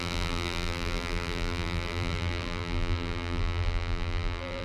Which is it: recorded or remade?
remade